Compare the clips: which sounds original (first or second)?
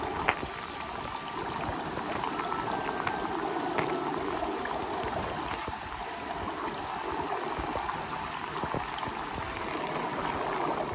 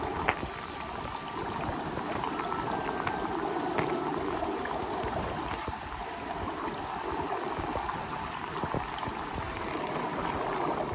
first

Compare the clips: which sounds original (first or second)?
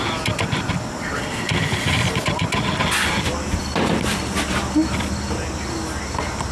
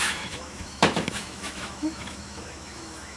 first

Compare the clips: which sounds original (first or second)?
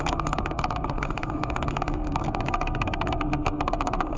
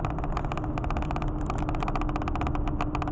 second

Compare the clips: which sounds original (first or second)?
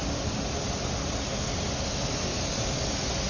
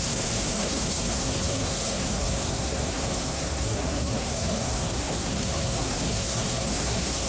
first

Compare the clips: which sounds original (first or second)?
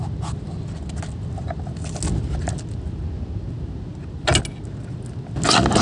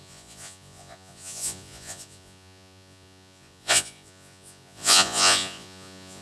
first